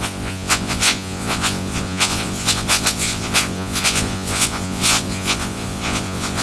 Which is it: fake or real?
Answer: fake